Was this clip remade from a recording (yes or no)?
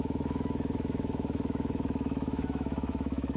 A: yes